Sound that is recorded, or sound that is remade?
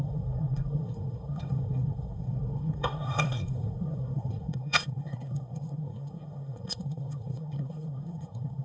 remade